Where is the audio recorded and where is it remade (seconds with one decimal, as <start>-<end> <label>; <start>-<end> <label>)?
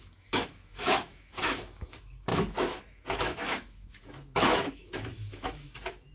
0.0-6.1 remade